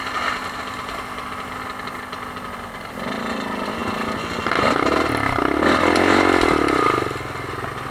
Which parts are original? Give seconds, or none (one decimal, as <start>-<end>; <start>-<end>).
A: 0.0-7.9